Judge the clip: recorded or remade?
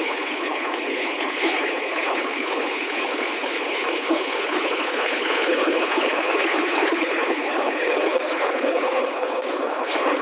remade